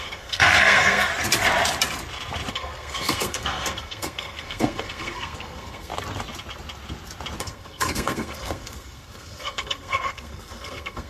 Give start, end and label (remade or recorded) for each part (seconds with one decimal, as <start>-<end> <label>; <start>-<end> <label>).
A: 0.0-1.1 remade; 1.1-2.5 recorded; 2.5-5.9 remade; 5.9-7.4 recorded; 7.4-11.1 remade